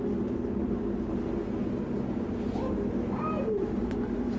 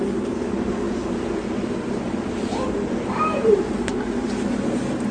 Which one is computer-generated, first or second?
second